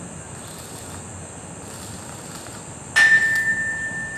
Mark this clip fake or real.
real